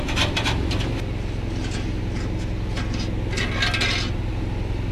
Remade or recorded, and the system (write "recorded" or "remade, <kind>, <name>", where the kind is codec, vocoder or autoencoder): recorded